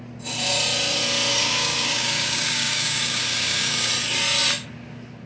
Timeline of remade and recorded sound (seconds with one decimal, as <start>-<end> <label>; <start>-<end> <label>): 0.0-1.3 recorded; 1.3-3.9 remade; 3.9-5.3 recorded

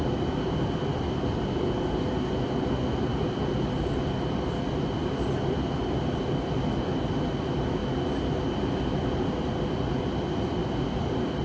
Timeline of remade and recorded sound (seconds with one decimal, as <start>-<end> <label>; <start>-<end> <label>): 0.0-11.4 recorded

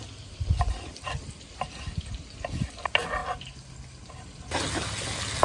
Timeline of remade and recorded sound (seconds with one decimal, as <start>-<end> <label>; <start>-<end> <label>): 0.0-5.4 recorded

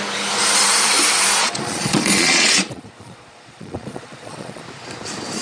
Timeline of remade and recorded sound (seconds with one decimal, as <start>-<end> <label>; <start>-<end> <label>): 0.0-1.4 recorded; 1.4-4.6 remade; 4.6-5.4 recorded

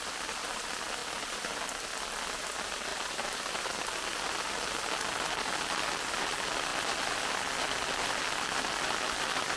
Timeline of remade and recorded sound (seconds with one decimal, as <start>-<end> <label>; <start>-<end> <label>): 0.0-1.0 recorded; 1.0-1.5 remade; 1.5-2.9 recorded; 2.9-3.8 remade; 3.8-9.6 recorded

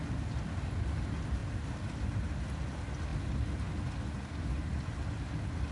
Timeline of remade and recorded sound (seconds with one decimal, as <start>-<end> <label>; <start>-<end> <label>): 0.0-5.7 recorded